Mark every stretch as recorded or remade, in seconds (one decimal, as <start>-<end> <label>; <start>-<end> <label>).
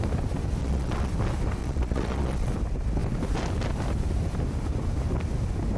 0.0-0.6 recorded; 0.6-1.1 remade; 1.1-1.6 recorded; 1.6-2.5 remade; 2.5-5.8 recorded